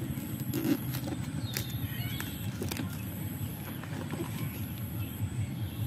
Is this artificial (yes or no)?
no